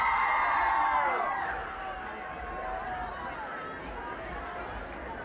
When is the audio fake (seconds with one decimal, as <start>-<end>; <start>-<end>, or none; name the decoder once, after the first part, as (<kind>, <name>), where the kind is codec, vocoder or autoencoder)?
none